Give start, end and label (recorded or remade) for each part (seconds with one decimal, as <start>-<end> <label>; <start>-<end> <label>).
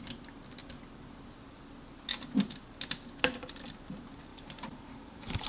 0.0-4.3 recorded; 4.3-5.5 remade